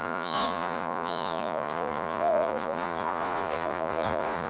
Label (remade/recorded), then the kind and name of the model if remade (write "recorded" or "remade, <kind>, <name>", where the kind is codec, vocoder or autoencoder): remade, vocoder, Vocos